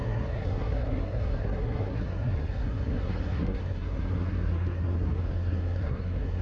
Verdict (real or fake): fake